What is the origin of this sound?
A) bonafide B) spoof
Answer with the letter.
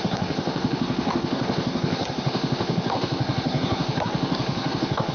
B